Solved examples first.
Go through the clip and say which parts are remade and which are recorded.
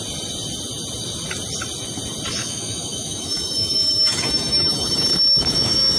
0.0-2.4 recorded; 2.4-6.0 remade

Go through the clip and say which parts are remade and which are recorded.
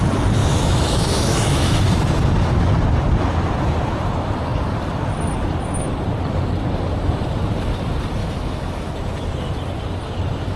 0.0-0.4 recorded; 0.4-1.8 remade; 1.8-8.2 recorded; 8.2-8.9 remade; 8.9-10.6 recorded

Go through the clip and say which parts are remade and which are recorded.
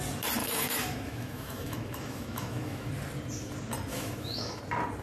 0.0-0.4 recorded; 0.4-2.9 remade; 2.9-3.9 recorded; 3.9-4.6 remade; 4.6-5.0 recorded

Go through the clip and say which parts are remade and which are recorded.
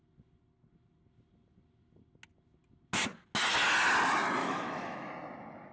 0.0-4.4 recorded; 4.4-5.1 remade; 5.1-5.7 recorded